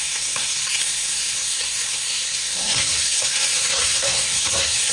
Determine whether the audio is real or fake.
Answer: fake